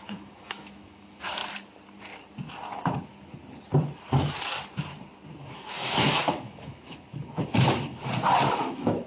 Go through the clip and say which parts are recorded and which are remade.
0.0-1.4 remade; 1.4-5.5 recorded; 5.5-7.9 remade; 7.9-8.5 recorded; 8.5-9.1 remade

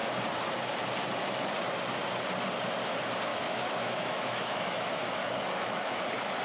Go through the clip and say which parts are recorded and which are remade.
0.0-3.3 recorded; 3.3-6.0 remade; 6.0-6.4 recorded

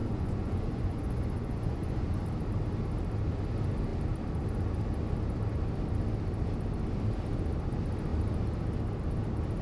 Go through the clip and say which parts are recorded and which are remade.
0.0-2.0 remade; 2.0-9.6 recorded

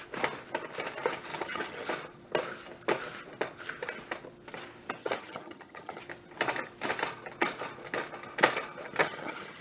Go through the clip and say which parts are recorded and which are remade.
0.0-1.3 recorded; 1.3-1.9 remade; 1.9-5.0 recorded; 5.0-6.0 remade; 6.0-9.0 recorded; 9.0-9.6 remade

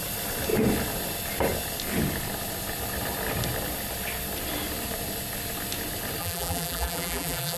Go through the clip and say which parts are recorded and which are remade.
0.0-6.2 recorded; 6.2-7.6 remade

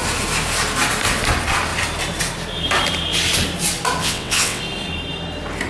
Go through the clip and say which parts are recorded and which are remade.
0.0-4.0 recorded; 4.0-4.6 remade; 4.6-5.7 recorded

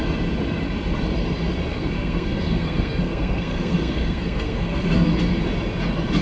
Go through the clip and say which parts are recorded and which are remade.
0.0-1.7 recorded; 1.7-5.1 remade; 5.1-6.2 recorded